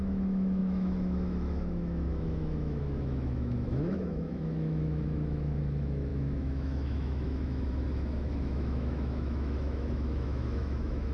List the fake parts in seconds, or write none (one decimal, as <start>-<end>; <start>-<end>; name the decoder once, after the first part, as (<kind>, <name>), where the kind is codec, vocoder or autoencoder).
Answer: 0.0-11.1 (autoencoder, DAC-VAE)